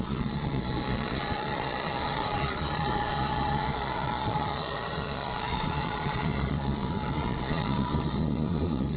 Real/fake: fake